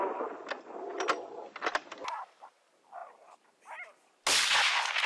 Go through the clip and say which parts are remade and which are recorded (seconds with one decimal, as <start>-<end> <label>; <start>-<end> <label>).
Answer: 0.0-5.1 recorded